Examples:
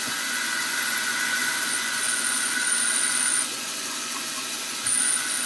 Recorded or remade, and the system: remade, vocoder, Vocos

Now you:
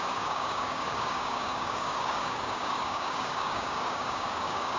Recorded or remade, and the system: remade, codec, DAC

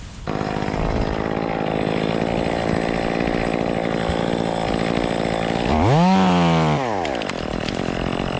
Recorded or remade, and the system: recorded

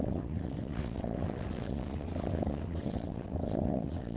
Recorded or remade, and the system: remade, vocoder, WaveNeXt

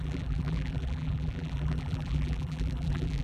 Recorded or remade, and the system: remade, vocoder, BigVGAN v2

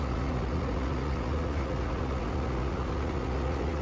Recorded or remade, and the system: remade, vocoder, Vocos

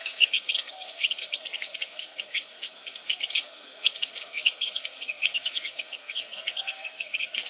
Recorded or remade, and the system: remade, codec, SNAC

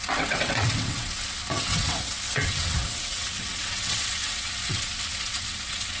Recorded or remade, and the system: remade, vocoder, WaveNeXt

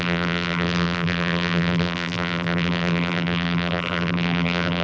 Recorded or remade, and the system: remade, vocoder, BigVGAN v2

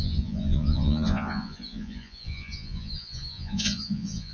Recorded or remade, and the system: remade, vocoder, Vocos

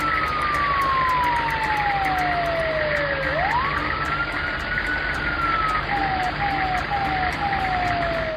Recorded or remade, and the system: recorded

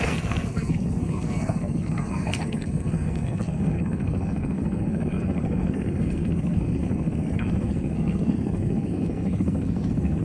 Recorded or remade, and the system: remade, codec, SNAC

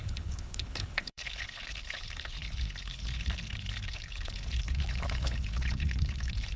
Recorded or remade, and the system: remade, codec, HILCodec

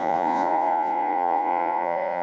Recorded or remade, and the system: remade, vocoder, Vocos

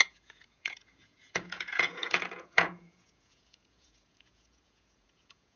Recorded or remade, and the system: remade, vocoder, Vocos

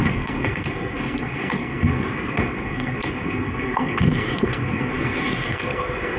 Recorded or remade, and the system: remade, codec, SNAC